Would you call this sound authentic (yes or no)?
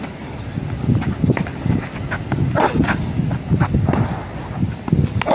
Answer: yes